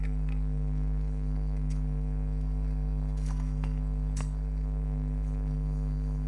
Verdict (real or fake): fake